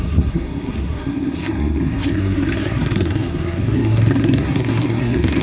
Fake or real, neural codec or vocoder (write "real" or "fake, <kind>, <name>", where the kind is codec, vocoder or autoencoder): fake, codec, SNAC